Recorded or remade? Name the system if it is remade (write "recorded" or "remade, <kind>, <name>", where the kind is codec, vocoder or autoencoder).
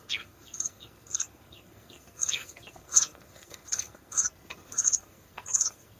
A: remade, codec, SNAC